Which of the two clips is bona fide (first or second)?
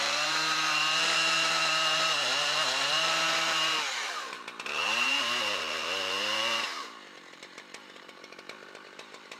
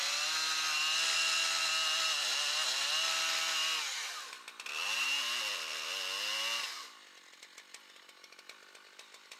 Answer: second